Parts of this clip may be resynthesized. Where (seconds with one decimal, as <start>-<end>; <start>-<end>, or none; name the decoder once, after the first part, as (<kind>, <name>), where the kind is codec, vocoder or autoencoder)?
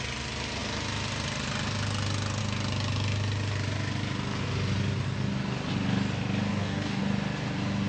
6.5-7.0 (codec, DAC)